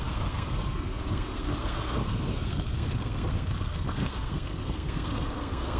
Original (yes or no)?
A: no